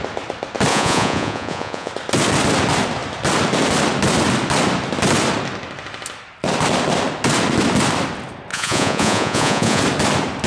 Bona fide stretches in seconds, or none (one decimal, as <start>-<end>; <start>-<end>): 0.0-0.7; 1.9-8.5; 9.8-10.5

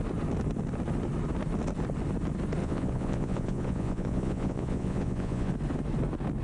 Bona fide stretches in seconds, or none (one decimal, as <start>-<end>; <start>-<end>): 0.0-2.6; 5.5-6.4

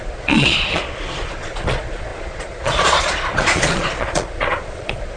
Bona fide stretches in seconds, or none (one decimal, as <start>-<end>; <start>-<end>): none